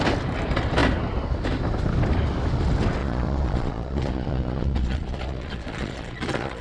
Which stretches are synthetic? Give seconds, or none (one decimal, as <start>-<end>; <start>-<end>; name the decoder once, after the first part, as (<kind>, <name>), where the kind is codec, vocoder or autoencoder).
3.0-6.6 (vocoder, Vocos)